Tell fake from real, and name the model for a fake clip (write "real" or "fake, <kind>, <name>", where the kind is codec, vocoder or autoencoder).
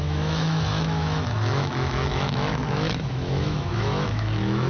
fake, autoencoder, DAC-VAE